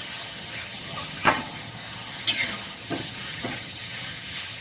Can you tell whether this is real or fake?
fake